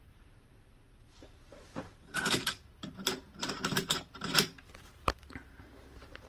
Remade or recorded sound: remade